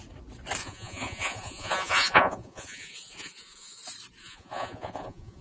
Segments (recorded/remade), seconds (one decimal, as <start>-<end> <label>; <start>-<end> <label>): 0.0-0.6 recorded; 0.6-3.8 remade; 3.8-4.2 recorded; 4.2-5.4 remade

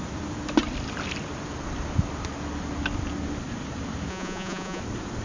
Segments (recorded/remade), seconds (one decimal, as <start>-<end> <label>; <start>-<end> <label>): 0.0-4.1 recorded; 4.1-4.8 remade; 4.8-5.2 recorded

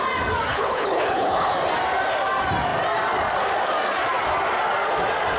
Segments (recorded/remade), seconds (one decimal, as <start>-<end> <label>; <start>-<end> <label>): 0.0-0.5 recorded; 0.5-1.5 remade; 1.5-5.4 recorded

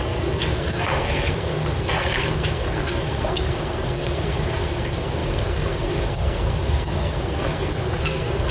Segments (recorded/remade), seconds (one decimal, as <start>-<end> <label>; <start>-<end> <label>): 0.0-8.5 remade

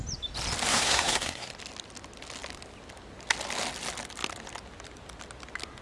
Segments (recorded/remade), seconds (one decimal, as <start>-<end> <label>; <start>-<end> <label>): 0.0-0.7 recorded; 0.7-1.5 remade; 1.5-5.8 recorded

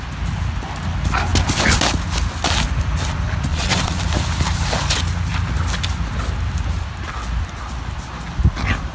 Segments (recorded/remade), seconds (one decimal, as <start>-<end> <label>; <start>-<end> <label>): 0.0-3.5 recorded; 3.5-4.0 remade; 4.0-8.9 recorded

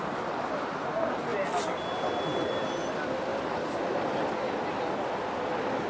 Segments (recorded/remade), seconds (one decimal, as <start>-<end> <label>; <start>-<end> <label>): 0.0-5.9 recorded